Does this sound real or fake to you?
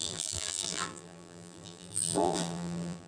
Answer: fake